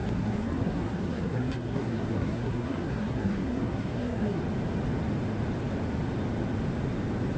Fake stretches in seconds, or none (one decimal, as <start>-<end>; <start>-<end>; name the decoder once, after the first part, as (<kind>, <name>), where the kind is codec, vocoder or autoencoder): 0.0-4.4 (codec, SNAC)